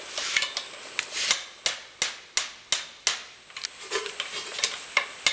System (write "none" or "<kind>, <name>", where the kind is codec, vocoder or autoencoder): none